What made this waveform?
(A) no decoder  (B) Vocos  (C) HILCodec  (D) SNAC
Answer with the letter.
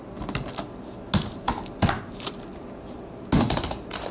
A